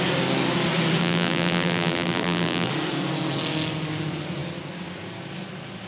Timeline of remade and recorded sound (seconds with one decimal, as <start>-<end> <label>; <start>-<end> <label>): 0.0-1.0 recorded; 1.0-2.7 remade; 2.7-5.9 recorded